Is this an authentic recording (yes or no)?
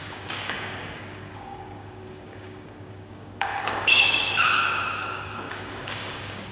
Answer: no